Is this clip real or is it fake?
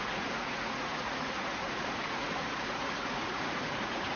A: fake